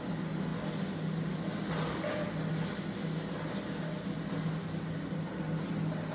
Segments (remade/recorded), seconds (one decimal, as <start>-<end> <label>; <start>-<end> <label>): 0.0-6.1 recorded